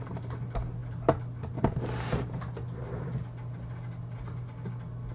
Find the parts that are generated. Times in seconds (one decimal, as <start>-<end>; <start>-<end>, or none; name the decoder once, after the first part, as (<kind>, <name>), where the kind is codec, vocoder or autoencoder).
none